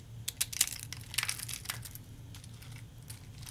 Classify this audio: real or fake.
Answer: real